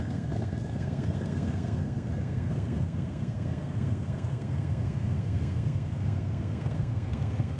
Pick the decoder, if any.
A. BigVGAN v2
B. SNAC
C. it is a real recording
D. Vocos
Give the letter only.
B